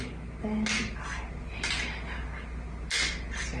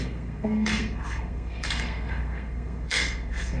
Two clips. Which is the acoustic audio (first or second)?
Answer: first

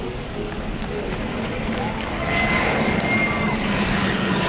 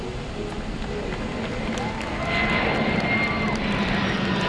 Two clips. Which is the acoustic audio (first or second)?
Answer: second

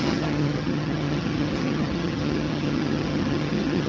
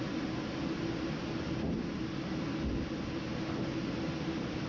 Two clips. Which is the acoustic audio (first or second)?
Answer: second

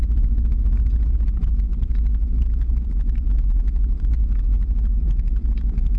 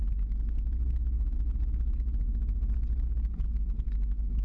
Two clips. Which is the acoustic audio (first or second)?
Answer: second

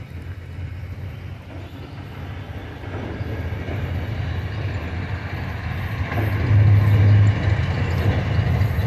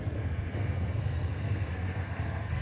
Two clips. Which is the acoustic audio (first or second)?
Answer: first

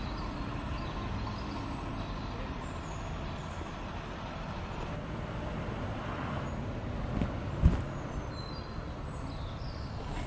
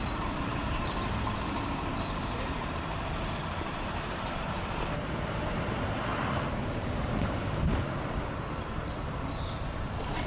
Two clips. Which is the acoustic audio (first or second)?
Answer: first